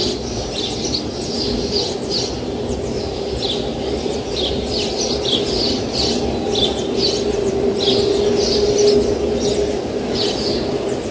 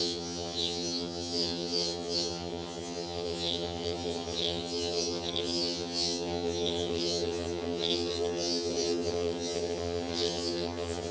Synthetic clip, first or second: second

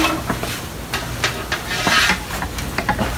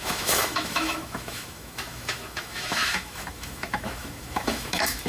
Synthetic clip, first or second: second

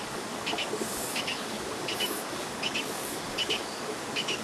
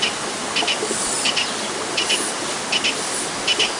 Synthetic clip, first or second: first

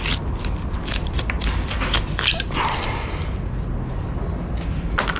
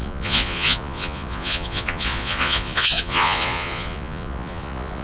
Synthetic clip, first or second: second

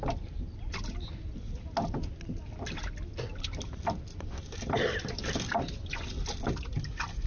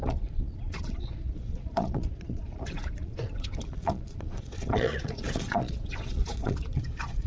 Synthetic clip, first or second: second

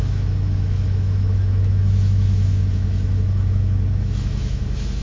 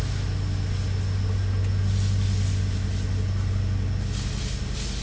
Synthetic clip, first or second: first